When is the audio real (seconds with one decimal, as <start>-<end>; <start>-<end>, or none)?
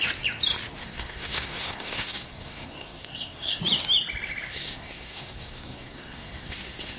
0.0-0.8; 3.6-4.5